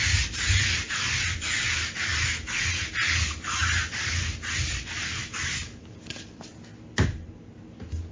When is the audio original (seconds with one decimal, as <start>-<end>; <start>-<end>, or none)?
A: 0.0-8.1